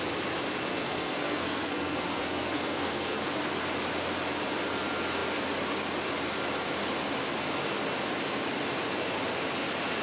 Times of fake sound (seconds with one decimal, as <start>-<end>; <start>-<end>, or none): 0.7-3.2